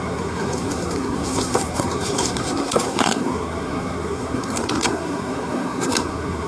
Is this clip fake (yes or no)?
yes